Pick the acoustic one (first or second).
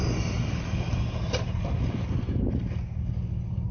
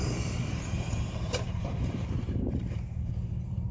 first